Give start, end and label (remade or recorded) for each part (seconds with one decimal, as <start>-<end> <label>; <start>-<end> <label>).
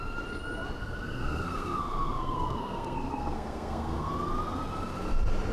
0.0-0.8 recorded; 0.8-4.1 remade; 4.1-5.5 recorded